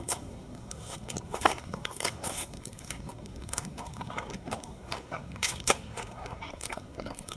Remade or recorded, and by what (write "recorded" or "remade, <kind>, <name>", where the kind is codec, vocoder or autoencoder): remade, codec, SNAC